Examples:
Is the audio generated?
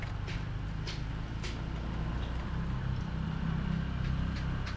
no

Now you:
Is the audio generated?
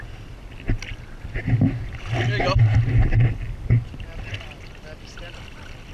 no